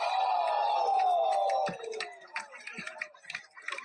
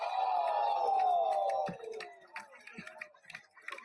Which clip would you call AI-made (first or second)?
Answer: first